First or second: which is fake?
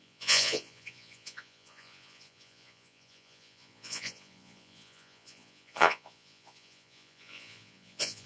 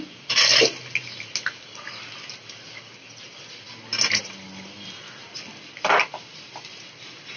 first